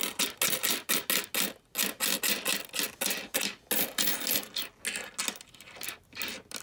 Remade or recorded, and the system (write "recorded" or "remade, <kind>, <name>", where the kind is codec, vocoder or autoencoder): recorded